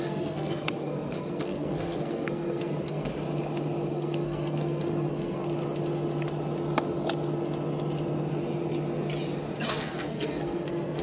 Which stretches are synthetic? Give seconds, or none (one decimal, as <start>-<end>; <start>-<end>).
0.0-3.1; 3.9-5.4; 9.7-11.0